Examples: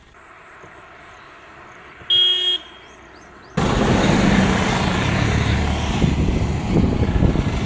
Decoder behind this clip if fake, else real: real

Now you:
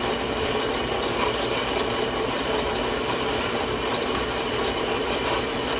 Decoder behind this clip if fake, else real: fake, vocoder, BigVGAN v2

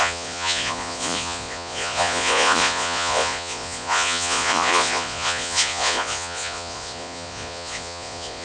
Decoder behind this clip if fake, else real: fake, vocoder, Vocos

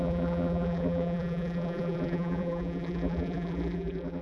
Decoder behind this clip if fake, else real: fake, vocoder, BigVGAN v2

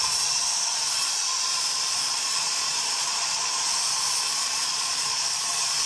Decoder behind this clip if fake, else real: fake, vocoder, Vocos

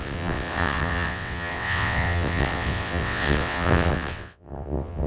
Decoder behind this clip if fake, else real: fake, vocoder, WaveNeXt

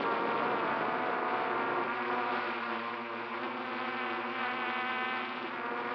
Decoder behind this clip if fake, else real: real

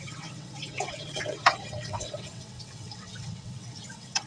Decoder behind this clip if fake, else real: fake, vocoder, WaveNeXt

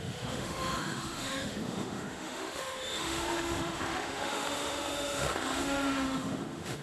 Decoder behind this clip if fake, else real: fake, autoencoder, DAC-VAE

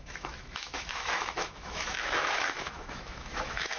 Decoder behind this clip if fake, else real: fake, autoencoder, DAC-VAE